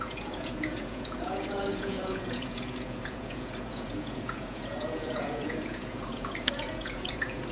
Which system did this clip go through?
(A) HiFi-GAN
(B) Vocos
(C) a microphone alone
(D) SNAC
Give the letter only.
B